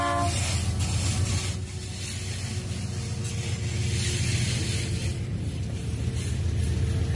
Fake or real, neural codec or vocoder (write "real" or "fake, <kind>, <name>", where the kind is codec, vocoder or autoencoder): real